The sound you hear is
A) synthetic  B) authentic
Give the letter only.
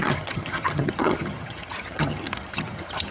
A